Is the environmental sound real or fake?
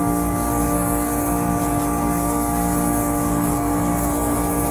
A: fake